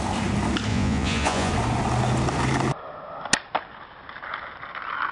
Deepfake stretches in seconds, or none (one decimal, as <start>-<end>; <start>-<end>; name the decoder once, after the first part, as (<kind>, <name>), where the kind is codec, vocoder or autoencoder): 0.7-1.5 (vocoder, Vocos)